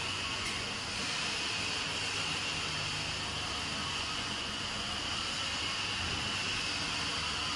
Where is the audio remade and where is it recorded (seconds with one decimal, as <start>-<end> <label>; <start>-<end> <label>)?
0.0-0.7 remade; 0.7-3.8 recorded; 3.8-4.9 remade; 4.9-7.6 recorded